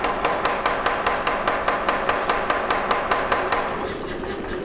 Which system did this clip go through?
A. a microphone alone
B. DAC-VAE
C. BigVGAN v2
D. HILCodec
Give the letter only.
A